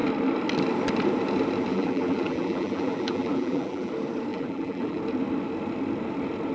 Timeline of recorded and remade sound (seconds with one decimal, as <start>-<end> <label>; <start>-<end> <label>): 0.0-1.7 recorded; 1.7-3.9 remade; 3.9-4.3 recorded; 4.3-5.0 remade; 5.0-6.5 recorded